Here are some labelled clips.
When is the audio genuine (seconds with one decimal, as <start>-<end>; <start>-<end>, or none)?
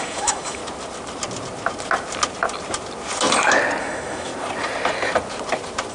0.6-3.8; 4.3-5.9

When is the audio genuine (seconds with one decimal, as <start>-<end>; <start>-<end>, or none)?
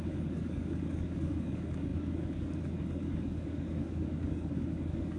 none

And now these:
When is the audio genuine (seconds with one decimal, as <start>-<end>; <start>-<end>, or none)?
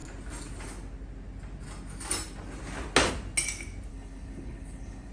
0.0-3.9